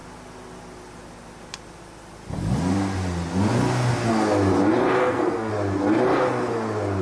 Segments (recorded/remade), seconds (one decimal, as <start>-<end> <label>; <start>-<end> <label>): 0.0-5.0 recorded; 5.0-5.5 remade; 5.5-7.0 recorded